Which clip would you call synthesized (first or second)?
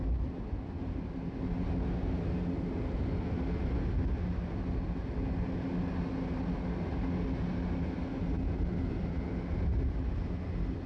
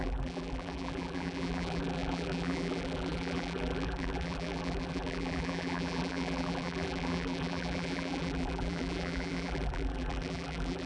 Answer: second